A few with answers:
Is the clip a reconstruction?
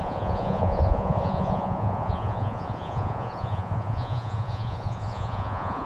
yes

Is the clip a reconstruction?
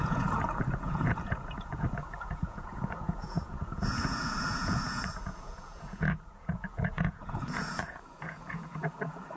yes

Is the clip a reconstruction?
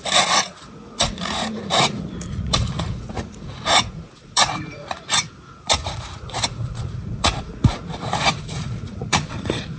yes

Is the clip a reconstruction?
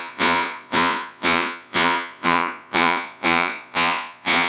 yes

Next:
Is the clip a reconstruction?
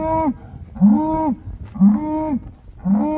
no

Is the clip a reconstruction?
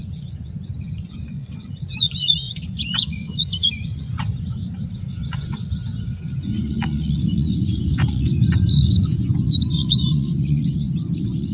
yes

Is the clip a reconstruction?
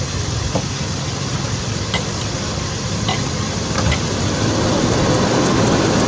no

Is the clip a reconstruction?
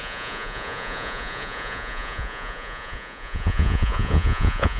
yes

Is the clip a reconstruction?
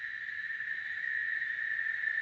no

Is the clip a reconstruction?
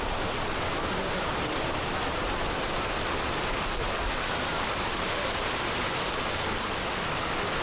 no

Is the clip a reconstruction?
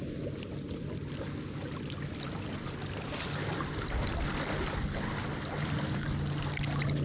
no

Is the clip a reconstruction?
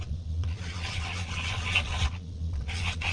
yes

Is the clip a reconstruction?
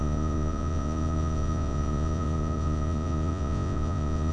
yes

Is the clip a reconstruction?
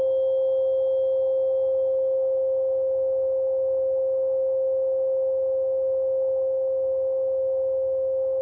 no